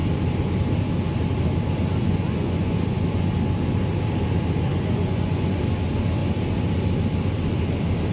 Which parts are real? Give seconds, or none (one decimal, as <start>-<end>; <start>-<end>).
0.0-2.0; 3.3-4.7; 5.6-8.1